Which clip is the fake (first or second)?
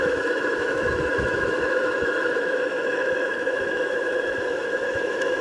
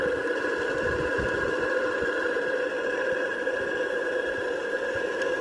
first